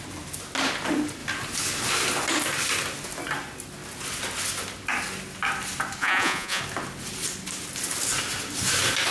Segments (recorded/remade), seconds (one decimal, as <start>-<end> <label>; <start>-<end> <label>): 0.0-6.0 recorded; 6.0-6.6 remade; 6.6-9.1 recorded